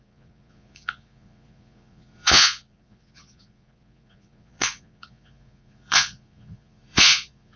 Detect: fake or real fake